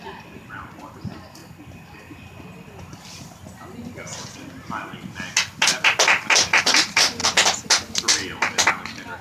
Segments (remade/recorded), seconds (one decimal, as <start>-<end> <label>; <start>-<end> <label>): 0.0-1.4 remade; 1.4-6.6 recorded; 6.6-7.2 remade; 7.2-8.7 recorded; 8.7-9.2 remade